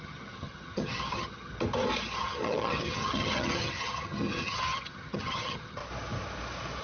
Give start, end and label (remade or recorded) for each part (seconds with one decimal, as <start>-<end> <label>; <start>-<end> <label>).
0.0-1.5 remade; 1.5-2.2 recorded; 2.2-5.8 remade; 5.8-6.8 recorded